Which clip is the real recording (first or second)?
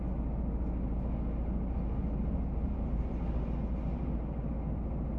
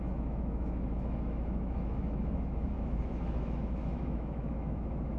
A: first